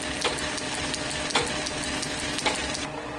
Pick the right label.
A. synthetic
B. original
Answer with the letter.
B